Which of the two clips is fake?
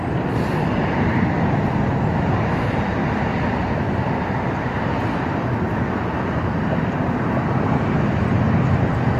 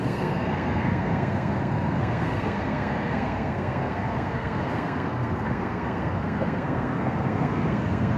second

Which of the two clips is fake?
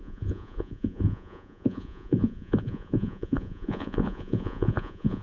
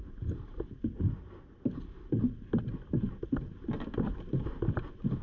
first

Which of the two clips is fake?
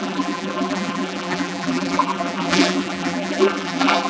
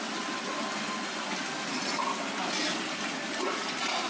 first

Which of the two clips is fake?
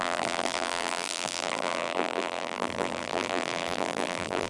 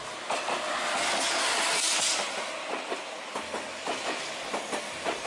first